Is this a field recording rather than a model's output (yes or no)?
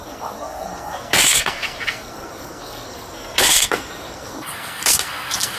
no